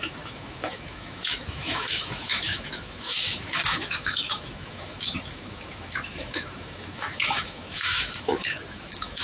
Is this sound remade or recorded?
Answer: remade